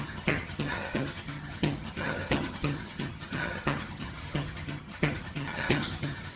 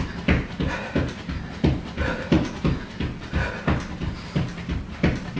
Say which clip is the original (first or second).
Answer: second